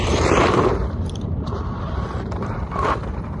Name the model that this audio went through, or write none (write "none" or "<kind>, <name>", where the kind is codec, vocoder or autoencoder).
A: vocoder, BigVGAN v2